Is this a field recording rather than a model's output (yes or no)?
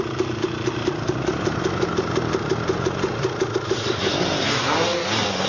yes